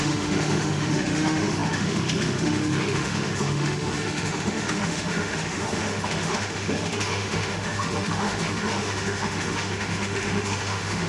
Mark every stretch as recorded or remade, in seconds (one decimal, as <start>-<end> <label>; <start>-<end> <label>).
0.0-11.1 remade